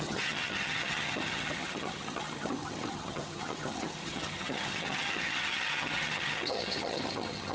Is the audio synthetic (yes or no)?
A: yes